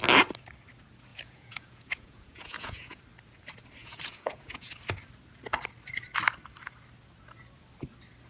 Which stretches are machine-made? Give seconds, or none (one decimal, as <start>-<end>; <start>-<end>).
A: 1.1-3.0; 3.8-4.7